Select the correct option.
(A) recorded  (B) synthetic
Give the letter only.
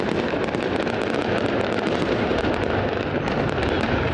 A